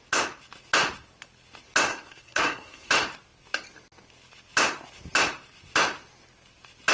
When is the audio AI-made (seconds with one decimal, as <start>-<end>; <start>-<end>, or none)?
1.9-2.9